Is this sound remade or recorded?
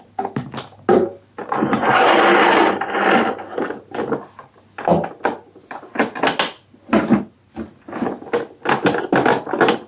recorded